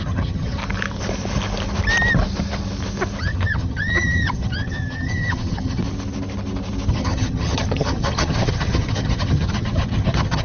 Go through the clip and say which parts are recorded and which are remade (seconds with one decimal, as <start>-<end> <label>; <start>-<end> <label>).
0.0-0.6 remade; 0.6-3.2 recorded; 3.2-5.8 remade; 5.8-6.9 recorded; 6.9-10.4 remade